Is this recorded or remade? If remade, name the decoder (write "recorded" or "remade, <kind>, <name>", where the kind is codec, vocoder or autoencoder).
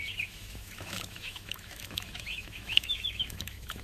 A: remade, autoencoder, DAC-VAE